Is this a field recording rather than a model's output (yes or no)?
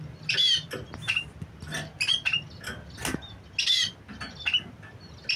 yes